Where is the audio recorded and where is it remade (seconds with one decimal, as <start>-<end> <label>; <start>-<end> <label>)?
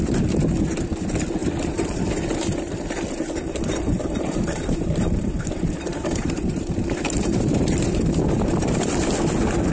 0.0-1.4 recorded; 1.4-2.1 remade; 2.1-3.7 recorded; 3.7-9.0 remade; 9.0-9.7 recorded